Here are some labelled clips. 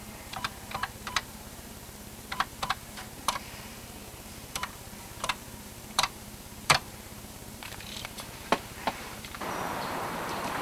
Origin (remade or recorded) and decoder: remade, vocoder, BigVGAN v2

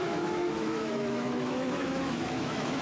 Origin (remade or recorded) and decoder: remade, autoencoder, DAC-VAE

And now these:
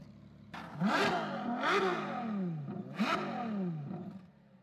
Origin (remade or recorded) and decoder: recorded